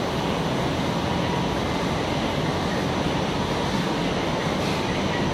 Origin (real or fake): real